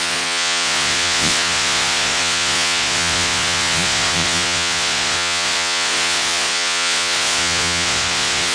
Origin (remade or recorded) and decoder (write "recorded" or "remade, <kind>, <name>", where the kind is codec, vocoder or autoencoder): remade, vocoder, Vocos